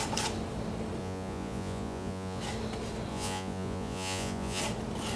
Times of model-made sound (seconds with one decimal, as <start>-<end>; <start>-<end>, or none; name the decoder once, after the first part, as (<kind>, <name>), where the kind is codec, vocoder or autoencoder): 1.0-2.4 (vocoder, Vocos); 3.1-4.6

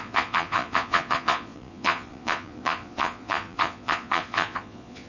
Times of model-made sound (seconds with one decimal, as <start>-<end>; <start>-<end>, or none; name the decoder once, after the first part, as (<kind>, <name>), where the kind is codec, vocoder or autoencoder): 0.0-5.1 (vocoder, Vocos)

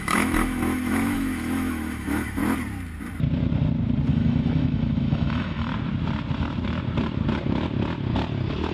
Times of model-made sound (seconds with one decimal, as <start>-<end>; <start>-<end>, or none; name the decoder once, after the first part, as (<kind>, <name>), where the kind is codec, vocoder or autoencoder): 0.0-2.4 (autoencoder, DAC-VAE); 4.1-5.7

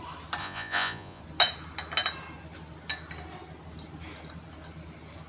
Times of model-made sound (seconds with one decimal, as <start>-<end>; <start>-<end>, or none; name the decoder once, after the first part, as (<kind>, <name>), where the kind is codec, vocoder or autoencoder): 0.4-1.2 (vocoder, Vocos)

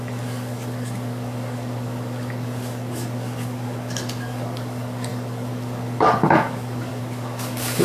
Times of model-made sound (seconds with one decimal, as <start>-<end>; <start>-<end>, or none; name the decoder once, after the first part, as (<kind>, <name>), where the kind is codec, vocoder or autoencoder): 0.0-7.8 (codec, DAC)

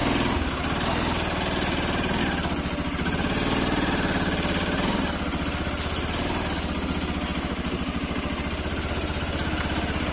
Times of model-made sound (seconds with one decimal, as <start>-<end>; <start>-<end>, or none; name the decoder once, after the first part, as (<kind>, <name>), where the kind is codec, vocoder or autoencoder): none